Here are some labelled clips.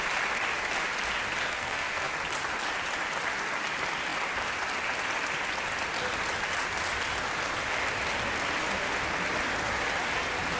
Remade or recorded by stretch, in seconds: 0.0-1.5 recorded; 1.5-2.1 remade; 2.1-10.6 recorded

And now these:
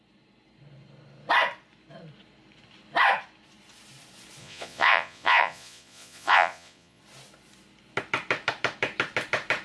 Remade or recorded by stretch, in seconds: 0.0-4.4 recorded; 4.4-7.0 remade; 7.0-9.6 recorded

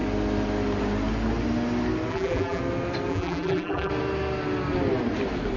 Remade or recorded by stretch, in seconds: 0.0-2.1 recorded; 2.1-2.6 remade; 2.6-3.1 recorded; 3.1-3.9 remade; 3.9-5.6 recorded

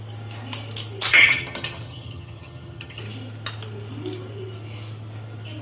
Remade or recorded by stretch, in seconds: 0.0-1.1 recorded; 1.1-3.0 remade; 3.0-5.6 recorded

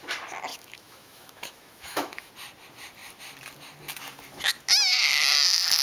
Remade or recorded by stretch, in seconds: 0.0-0.5 recorded; 0.5-2.3 remade; 2.3-5.8 recorded

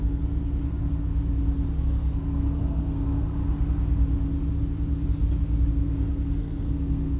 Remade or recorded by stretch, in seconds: 0.0-1.1 remade; 1.1-1.7 recorded; 1.7-3.4 remade; 3.4-5.7 recorded; 5.7-7.2 remade

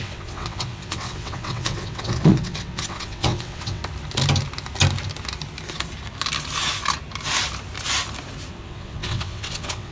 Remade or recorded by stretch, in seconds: 0.0-3.8 remade; 3.8-8.5 recorded; 8.5-9.9 remade

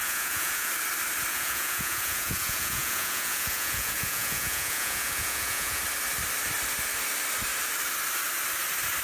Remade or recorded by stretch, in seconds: 0.0-0.7 remade; 0.7-1.3 recorded; 1.3-5.8 remade; 5.8-9.0 recorded